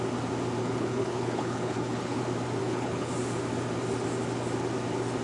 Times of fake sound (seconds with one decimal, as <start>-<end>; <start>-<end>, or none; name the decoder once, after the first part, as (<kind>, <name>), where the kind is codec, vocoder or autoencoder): 0.6-2.2 (codec, HILCodec); 2.6-3.1